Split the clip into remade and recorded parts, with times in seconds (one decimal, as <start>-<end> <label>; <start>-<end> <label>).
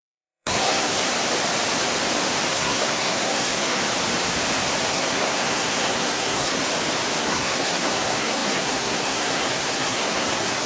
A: 0.0-1.1 remade; 1.1-2.5 recorded; 2.5-3.8 remade; 3.8-4.9 recorded; 4.9-6.6 remade; 6.6-7.2 recorded; 7.2-10.7 remade